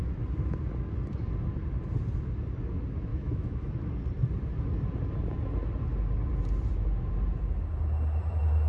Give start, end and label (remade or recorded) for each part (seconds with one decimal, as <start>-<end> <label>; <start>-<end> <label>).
0.0-3.1 recorded; 3.1-3.9 remade; 3.9-8.7 recorded